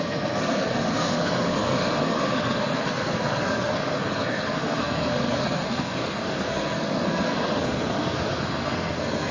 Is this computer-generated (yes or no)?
yes